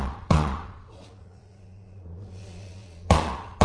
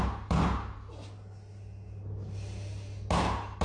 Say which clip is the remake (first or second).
first